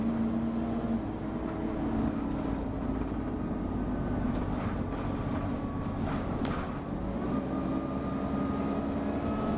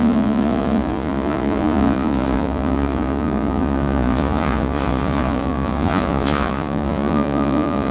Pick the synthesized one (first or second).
second